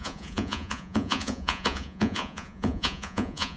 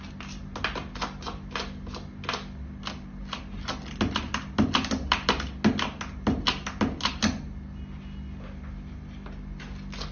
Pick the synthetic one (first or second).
first